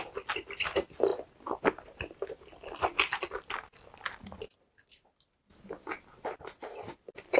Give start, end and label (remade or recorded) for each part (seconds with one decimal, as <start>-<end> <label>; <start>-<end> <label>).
0.0-7.4 recorded